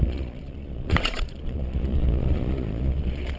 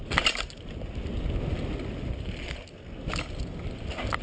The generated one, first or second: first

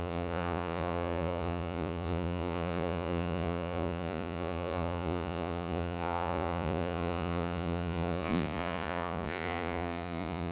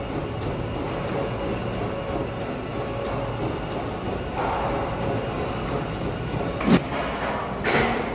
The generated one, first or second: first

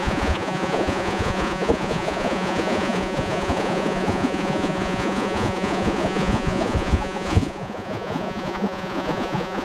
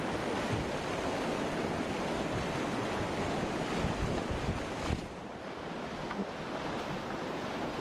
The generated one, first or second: first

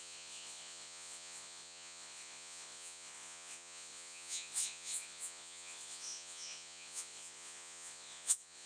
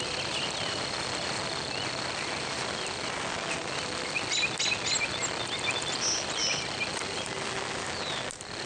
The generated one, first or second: first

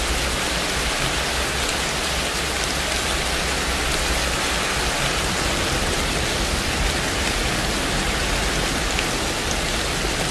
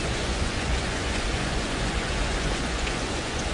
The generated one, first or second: second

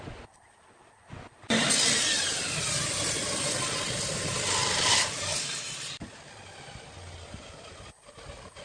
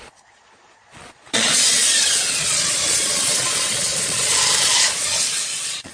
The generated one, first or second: second